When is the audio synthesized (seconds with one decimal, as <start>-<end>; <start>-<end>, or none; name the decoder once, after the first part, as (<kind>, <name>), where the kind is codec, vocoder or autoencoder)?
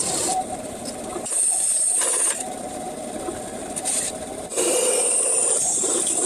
0.0-6.3 (vocoder, BigVGAN v2)